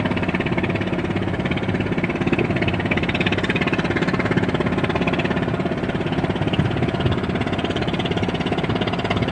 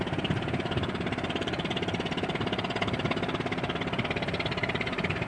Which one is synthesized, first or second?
second